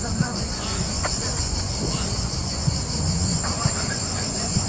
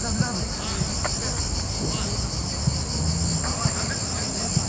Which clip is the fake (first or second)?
first